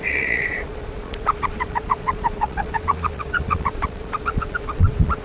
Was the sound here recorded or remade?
remade